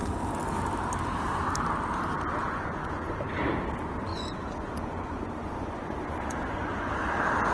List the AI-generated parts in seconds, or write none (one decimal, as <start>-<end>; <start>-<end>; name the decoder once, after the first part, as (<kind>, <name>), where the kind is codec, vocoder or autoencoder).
2.4-3.2 (vocoder, Vocos); 4.1-6.9